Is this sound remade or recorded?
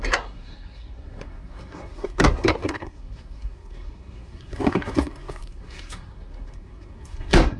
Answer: remade